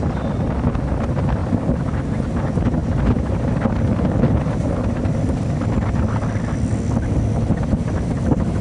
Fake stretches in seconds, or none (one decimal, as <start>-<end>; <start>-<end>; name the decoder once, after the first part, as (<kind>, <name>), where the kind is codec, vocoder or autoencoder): none